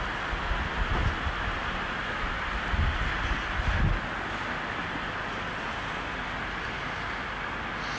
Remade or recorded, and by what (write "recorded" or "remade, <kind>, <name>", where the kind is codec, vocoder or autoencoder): recorded